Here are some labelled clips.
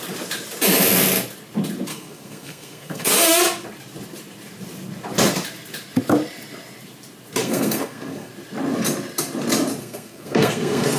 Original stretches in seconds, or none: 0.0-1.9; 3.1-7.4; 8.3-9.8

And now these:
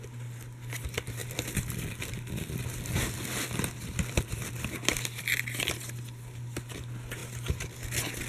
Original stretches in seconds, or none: 0.0-1.2; 5.2-8.3

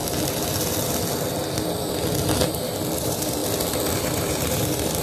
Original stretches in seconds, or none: 0.0-3.0; 3.4-4.0

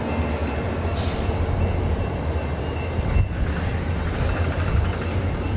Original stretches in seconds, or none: 0.0-0.4; 1.3-1.9